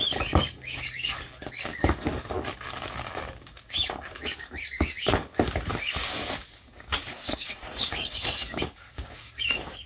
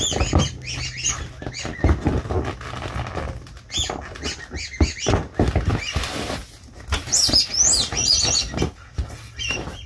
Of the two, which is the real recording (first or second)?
second